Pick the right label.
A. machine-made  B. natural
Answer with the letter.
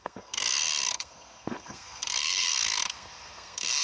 A